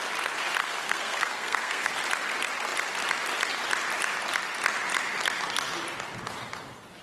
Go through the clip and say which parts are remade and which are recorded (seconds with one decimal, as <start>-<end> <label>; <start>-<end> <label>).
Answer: 0.0-0.6 recorded; 0.6-1.9 remade; 1.9-7.0 recorded